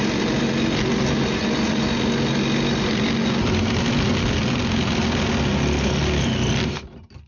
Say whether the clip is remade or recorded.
recorded